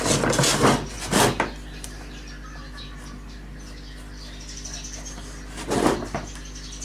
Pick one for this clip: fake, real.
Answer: real